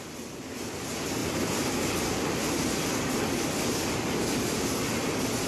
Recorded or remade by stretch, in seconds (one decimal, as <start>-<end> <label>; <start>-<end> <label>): 0.0-5.5 recorded